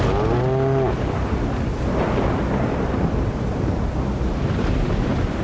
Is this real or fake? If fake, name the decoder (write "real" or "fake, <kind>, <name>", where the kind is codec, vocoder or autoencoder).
real